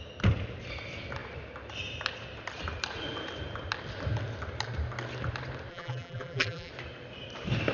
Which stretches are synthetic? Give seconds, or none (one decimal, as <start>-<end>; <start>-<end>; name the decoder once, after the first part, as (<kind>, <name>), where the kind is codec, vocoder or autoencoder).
5.7-6.7 (vocoder, BigVGAN v2)